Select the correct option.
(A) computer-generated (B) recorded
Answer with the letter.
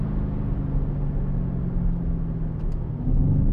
B